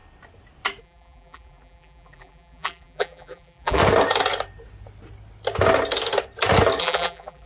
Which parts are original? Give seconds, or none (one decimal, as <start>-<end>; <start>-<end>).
0.0-0.8; 3.8-6.8